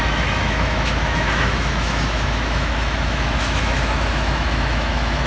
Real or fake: fake